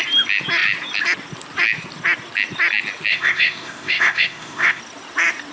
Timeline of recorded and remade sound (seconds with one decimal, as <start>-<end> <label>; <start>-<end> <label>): 0.0-3.1 recorded; 3.1-4.8 remade; 4.8-5.5 recorded

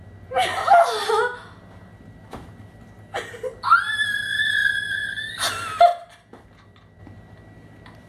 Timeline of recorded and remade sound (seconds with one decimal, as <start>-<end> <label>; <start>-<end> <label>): 0.0-0.5 recorded; 0.5-1.1 remade; 1.1-8.1 recorded

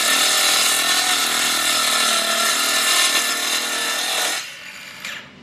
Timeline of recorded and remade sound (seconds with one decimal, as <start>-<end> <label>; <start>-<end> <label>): 0.0-5.4 recorded

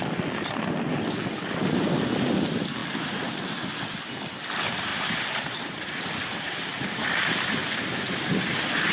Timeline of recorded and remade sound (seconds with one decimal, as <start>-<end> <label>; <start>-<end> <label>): 0.0-2.8 remade; 2.8-4.1 recorded; 4.1-7.6 remade; 7.6-8.9 recorded

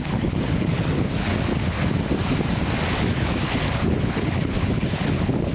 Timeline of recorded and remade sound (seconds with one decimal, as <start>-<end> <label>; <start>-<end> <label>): 0.0-1.3 remade; 1.3-3.1 recorded; 3.1-5.5 remade

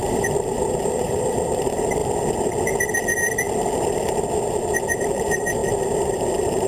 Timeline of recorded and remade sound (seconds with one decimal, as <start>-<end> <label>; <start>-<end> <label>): 0.0-2.0 remade; 2.0-5.0 recorded; 5.0-5.6 remade; 5.6-6.3 recorded; 6.3-6.7 remade

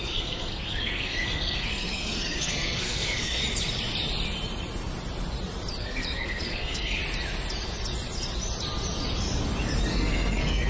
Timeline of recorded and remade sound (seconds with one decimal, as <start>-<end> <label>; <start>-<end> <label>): 0.0-3.4 remade; 3.4-5.8 recorded; 5.8-7.0 remade; 7.0-9.9 recorded; 9.9-10.7 remade

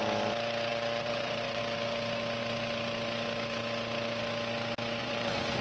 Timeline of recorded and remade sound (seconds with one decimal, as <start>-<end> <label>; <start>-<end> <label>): 0.0-0.7 recorded; 0.7-1.6 remade; 1.6-5.0 recorded; 5.0-5.6 remade